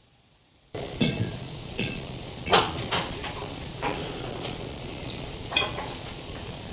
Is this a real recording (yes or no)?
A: no